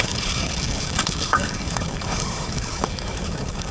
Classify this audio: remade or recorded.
remade